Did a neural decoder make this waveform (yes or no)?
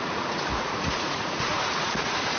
yes